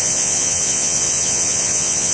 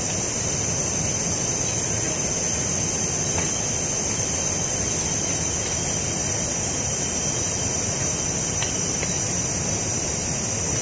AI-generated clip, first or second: first